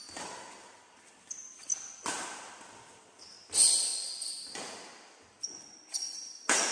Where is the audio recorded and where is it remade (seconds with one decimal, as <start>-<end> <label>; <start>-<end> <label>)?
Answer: 0.0-6.7 recorded